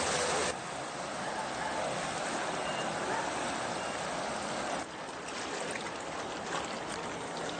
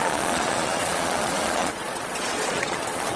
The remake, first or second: second